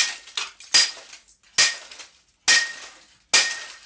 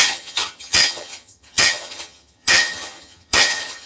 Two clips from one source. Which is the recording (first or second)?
first